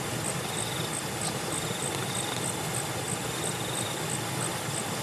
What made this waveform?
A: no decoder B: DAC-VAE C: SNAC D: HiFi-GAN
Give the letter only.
A